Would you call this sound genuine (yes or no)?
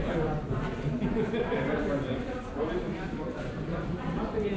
no